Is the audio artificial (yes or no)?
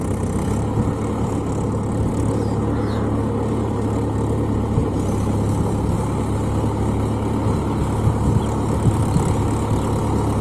no